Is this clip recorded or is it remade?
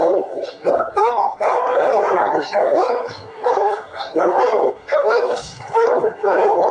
remade